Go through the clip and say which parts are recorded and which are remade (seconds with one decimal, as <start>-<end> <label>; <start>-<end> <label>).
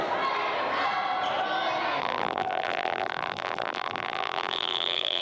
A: 0.0-2.0 recorded; 2.0-5.2 remade